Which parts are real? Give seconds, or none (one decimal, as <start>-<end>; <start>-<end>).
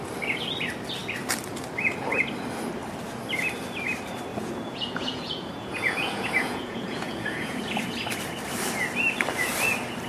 0.0-4.3; 7.6-10.1